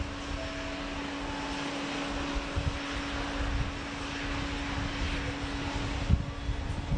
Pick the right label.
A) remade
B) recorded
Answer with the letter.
B